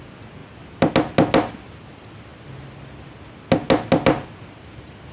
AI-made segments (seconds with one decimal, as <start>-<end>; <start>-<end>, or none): none